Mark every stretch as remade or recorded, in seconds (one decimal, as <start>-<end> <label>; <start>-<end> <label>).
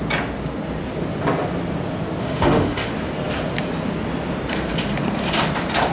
0.0-2.2 recorded; 2.2-2.9 remade; 2.9-5.9 recorded